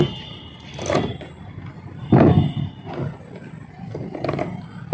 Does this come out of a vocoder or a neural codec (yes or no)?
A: no